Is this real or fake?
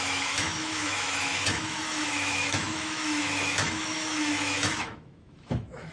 fake